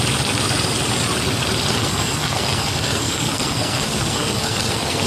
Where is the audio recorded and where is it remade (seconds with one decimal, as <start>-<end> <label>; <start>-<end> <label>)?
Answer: 0.0-1.7 recorded; 1.7-5.1 remade